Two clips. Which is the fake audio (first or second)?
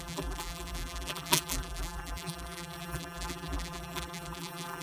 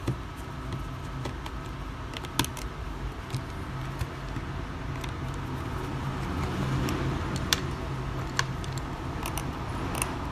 first